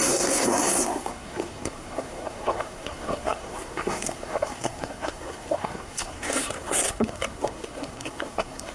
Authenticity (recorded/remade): remade